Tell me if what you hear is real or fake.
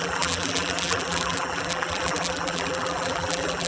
fake